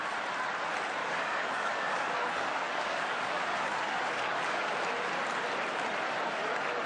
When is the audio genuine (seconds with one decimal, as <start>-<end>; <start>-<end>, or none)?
0.0-1.0; 4.4-6.9